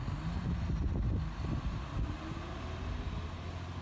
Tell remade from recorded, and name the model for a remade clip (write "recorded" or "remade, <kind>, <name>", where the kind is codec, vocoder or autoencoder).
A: recorded